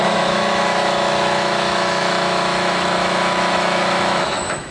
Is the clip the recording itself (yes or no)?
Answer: no